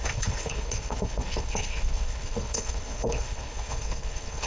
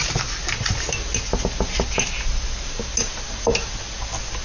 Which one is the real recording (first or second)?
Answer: second